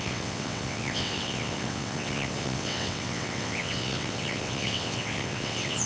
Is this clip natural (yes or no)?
no